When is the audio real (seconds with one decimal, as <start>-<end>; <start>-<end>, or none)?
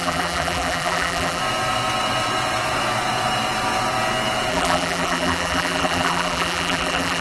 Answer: 1.4-4.5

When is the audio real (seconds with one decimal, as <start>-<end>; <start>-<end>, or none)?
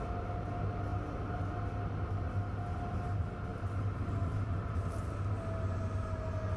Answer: 0.0-0.9; 1.4-3.5; 5.1-6.6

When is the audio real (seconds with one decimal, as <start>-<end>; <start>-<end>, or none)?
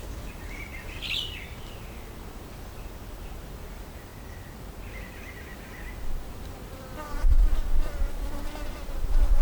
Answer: 4.1-4.9